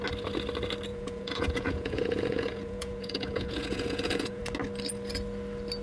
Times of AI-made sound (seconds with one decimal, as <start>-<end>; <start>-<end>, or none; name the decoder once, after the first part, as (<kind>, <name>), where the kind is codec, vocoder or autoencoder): 0.9-4.4 (vocoder, Vocos)